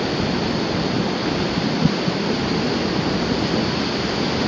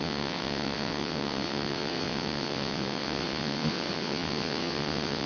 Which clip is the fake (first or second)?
second